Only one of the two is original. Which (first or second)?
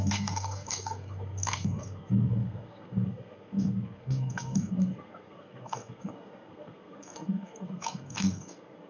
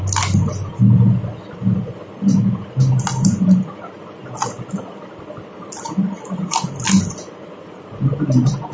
second